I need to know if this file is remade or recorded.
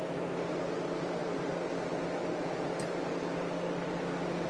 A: recorded